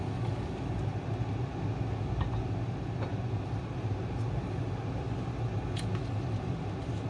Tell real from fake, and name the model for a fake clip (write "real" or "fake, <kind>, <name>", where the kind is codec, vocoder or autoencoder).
real